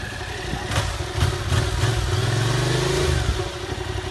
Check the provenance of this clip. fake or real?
real